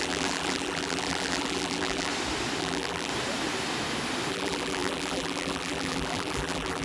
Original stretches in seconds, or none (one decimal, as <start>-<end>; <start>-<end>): 2.1-2.6; 3.1-4.3